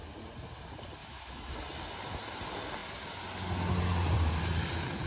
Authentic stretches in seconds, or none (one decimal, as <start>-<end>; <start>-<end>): 0.0-1.0; 1.5-5.1